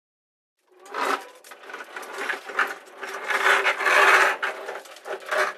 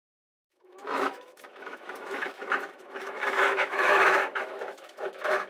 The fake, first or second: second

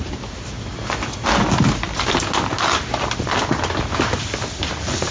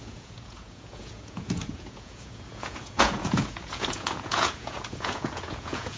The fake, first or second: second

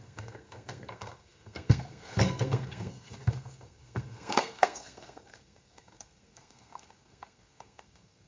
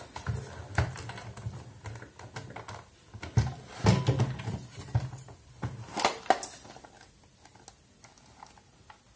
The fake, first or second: first